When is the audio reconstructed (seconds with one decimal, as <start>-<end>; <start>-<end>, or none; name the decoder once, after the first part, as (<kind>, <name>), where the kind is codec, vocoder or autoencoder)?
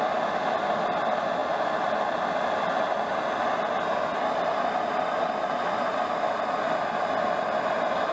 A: none